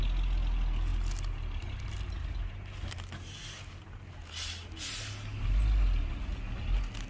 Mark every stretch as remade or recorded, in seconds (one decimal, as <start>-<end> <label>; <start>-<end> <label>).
0.0-7.1 recorded